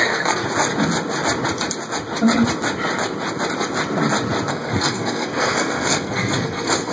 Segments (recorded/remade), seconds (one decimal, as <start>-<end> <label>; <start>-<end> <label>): 0.0-0.4 remade; 0.4-4.5 recorded; 4.5-6.9 remade

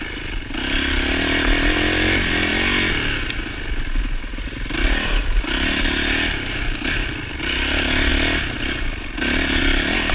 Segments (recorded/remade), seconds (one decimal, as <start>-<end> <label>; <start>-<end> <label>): 0.0-10.1 recorded

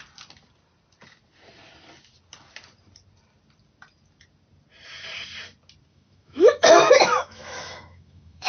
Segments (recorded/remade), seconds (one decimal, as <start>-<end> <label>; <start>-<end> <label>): 0.0-5.9 recorded; 5.9-8.5 remade

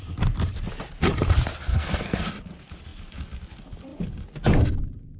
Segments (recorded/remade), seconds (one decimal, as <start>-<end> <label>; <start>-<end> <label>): 0.0-1.7 recorded; 1.7-2.3 remade; 2.3-5.2 recorded

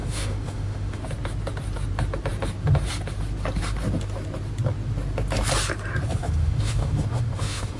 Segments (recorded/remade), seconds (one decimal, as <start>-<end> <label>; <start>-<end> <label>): 0.0-1.0 remade; 1.0-6.2 recorded; 6.2-7.8 remade